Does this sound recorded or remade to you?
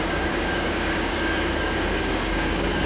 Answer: remade